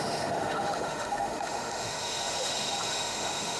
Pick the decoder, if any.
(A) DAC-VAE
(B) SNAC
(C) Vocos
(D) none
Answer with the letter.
A